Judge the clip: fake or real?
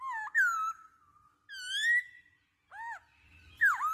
real